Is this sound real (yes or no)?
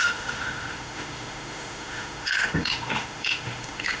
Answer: no